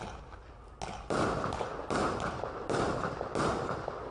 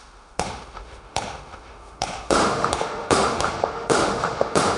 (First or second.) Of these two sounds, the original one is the first